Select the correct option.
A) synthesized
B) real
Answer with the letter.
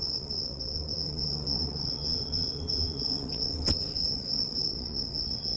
A